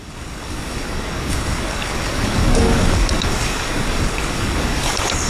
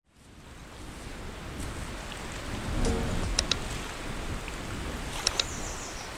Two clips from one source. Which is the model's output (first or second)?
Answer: first